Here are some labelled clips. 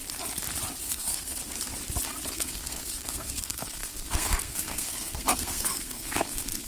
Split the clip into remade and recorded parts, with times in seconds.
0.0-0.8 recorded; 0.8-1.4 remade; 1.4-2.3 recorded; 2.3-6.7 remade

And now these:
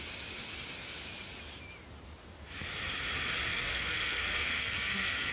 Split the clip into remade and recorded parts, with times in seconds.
0.0-3.5 recorded; 3.5-5.3 remade

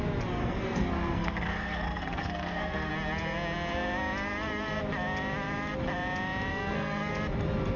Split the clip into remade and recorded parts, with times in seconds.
0.0-0.4 recorded; 0.4-2.9 remade; 2.9-6.5 recorded; 6.5-7.1 remade; 7.1-7.8 recorded

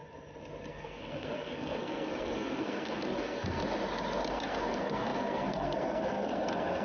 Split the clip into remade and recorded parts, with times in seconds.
0.0-0.7 recorded; 0.7-3.6 remade; 3.6-4.3 recorded; 4.3-6.8 remade

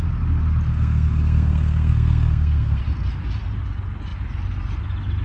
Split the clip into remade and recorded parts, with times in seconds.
0.0-0.7 recorded; 0.7-2.8 remade; 2.8-5.2 recorded

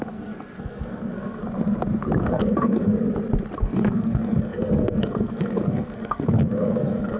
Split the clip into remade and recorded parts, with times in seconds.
0.0-1.4 remade; 1.4-2.2 recorded; 2.2-2.9 remade; 2.9-3.6 recorded; 3.6-7.2 remade

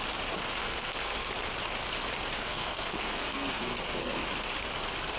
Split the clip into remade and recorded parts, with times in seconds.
0.0-0.6 recorded; 0.6-1.3 remade; 1.3-2.4 recorded; 2.4-4.2 remade; 4.2-5.2 recorded